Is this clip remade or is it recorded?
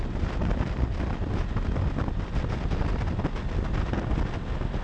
recorded